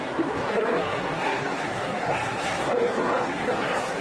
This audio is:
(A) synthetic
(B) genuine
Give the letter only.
A